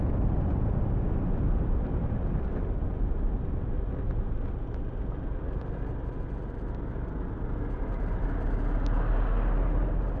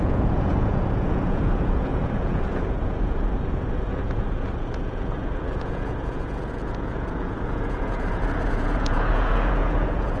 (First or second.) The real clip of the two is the first